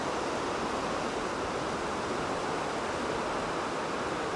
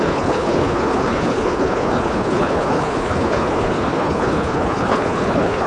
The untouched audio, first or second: first